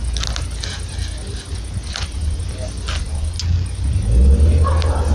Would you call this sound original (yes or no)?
yes